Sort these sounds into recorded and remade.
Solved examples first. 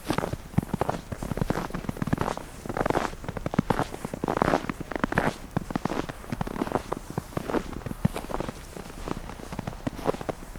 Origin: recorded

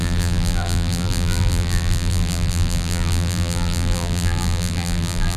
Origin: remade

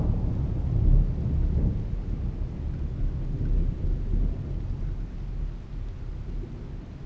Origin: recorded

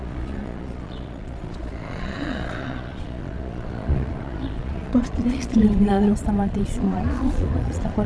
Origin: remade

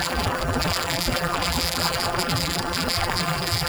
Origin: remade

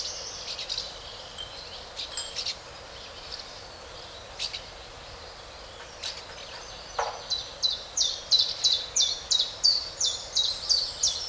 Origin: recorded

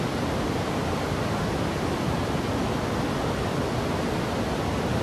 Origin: recorded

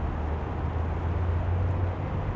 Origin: recorded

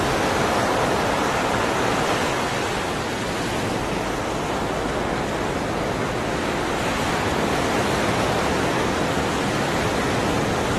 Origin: recorded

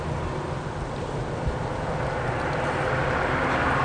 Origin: recorded